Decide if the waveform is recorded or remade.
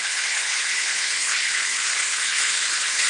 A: remade